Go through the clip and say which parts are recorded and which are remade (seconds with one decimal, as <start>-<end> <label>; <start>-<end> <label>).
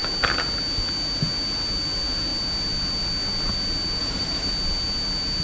0.0-4.0 recorded; 4.0-4.5 remade; 4.5-5.4 recorded